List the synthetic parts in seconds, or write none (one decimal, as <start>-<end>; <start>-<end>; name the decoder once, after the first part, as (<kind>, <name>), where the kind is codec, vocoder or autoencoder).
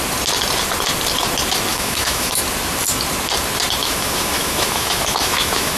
1.7-2.4 (autoencoder, DAC-VAE); 3.8-5.8